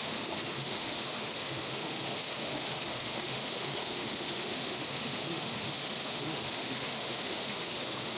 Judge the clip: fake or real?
fake